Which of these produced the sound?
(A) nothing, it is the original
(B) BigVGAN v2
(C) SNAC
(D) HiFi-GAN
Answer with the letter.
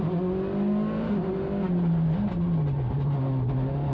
A